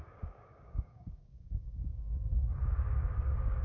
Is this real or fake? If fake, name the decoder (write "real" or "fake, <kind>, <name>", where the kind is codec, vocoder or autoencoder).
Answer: fake, codec, DAC